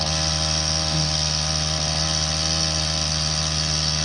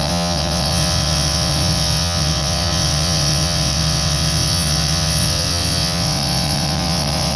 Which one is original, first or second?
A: first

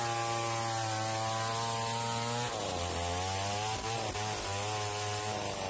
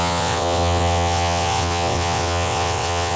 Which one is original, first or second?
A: first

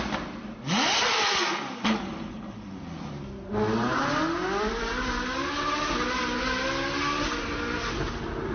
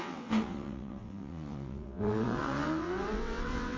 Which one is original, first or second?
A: first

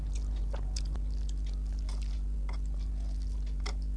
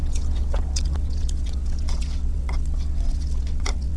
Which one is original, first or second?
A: first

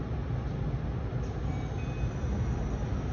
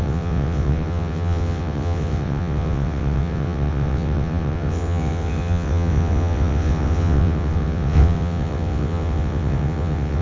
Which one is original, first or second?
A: first